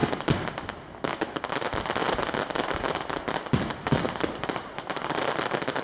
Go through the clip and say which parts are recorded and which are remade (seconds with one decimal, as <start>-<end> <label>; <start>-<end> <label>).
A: 0.0-5.8 recorded